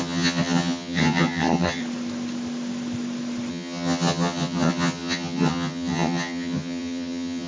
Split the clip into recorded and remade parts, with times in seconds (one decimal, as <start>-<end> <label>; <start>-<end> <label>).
0.0-1.8 remade; 1.8-3.5 recorded; 3.5-7.5 remade